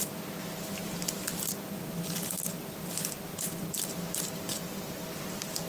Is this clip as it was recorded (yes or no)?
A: yes